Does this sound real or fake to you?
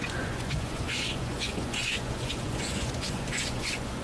fake